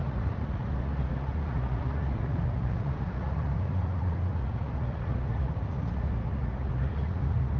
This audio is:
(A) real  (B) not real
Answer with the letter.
B